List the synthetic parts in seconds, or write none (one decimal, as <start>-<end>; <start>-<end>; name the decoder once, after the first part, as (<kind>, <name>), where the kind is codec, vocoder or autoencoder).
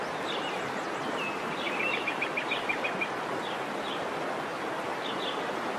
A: none